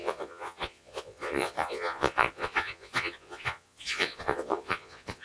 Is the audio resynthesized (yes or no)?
yes